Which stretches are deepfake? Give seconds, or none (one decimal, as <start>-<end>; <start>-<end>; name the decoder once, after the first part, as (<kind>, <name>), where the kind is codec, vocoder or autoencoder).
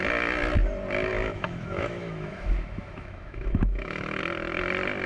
1.1-4.2 (autoencoder, DAC-VAE)